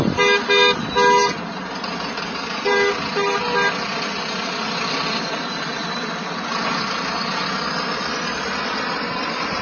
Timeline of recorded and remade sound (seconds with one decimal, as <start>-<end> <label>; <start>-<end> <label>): 0.0-1.2 recorded; 1.2-2.7 remade; 2.7-9.6 recorded